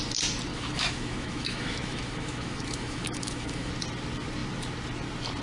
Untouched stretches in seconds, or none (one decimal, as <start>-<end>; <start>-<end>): 0.0-0.5; 3.7-5.4